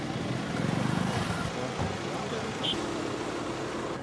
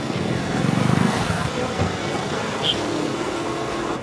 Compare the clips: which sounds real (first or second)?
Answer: first